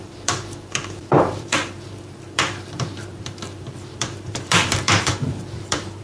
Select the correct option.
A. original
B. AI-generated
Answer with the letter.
B